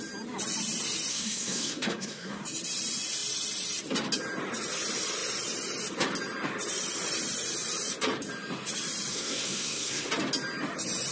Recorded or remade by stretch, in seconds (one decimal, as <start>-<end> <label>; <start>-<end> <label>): 0.0-1.1 recorded; 1.1-2.4 remade; 2.4-9.1 recorded; 9.1-10.1 remade; 10.1-11.1 recorded